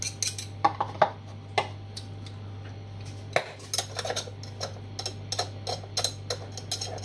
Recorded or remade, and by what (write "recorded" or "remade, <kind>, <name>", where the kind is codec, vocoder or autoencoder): recorded